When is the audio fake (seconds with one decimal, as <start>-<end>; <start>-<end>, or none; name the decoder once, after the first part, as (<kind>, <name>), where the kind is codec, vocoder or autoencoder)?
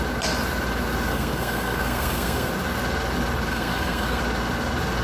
1.1-2.5 (codec, SNAC); 3.5-4.2